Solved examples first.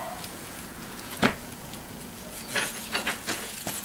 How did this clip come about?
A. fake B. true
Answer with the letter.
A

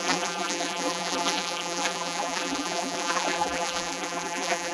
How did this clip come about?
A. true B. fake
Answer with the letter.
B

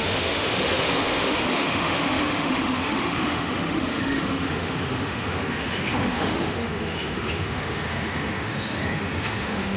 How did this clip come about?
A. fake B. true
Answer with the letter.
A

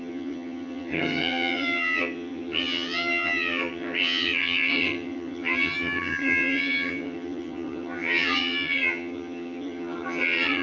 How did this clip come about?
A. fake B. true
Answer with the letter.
A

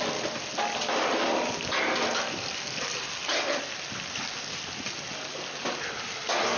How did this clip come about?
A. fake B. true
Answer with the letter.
B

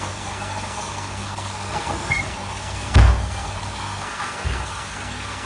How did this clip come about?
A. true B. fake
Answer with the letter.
B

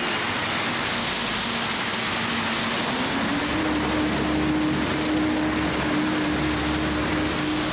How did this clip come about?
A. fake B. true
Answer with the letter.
B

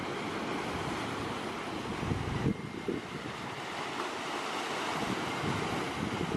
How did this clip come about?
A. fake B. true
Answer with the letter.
B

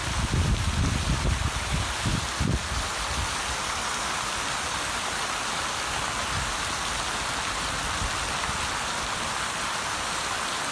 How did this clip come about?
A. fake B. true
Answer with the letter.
B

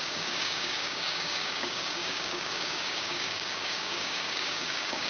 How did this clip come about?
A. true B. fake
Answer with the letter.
B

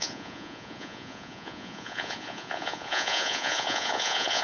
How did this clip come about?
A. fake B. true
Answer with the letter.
A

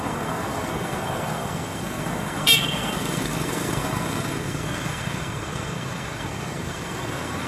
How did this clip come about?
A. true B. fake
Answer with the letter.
B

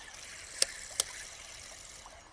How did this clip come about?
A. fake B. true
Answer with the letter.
B